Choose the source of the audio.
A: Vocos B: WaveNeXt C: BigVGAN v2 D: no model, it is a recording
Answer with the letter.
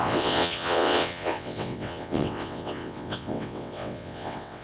B